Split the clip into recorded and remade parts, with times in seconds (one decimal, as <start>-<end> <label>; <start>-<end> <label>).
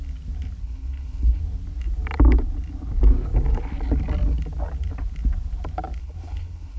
0.0-0.6 recorded; 0.6-1.4 remade; 1.4-6.0 recorded; 6.0-6.8 remade